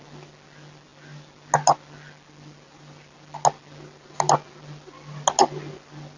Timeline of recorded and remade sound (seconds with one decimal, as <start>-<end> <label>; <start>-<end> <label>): 0.0-6.2 recorded